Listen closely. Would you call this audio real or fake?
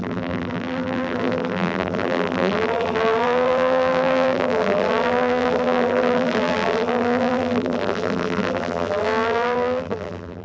fake